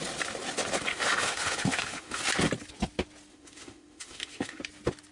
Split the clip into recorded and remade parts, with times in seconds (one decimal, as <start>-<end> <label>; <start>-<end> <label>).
0.0-0.9 recorded; 0.9-2.2 remade; 2.2-3.3 recorded; 3.3-4.6 remade; 4.6-5.1 recorded